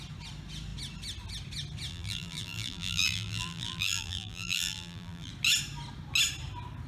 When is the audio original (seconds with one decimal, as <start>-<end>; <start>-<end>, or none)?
0.0-1.9; 5.3-6.9